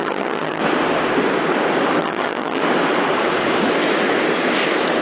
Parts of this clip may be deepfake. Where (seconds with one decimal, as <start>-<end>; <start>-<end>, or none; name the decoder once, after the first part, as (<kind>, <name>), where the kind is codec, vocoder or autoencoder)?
0.0-0.6 (vocoder, HiFi-GAN); 2.0-2.6